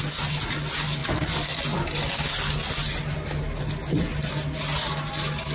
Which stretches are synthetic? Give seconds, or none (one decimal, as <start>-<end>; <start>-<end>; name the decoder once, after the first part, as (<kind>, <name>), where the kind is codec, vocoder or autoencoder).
none